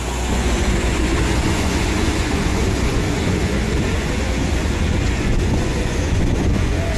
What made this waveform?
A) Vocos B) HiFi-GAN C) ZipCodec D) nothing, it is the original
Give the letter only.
A